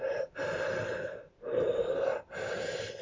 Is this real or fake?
real